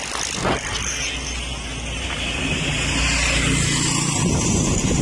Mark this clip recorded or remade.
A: recorded